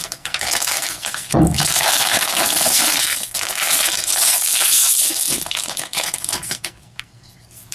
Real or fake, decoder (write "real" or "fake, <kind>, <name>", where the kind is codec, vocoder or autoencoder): fake, codec, SNAC